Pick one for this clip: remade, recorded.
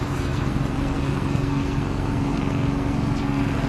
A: remade